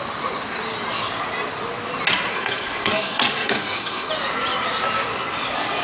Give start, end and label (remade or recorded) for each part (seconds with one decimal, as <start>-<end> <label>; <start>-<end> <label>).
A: 0.0-2.3 recorded; 2.3-4.1 remade; 4.1-5.8 recorded